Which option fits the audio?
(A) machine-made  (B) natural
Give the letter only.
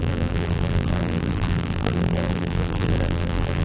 A